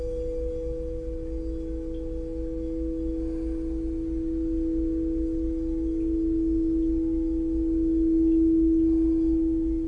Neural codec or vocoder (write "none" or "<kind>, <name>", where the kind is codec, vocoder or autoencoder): none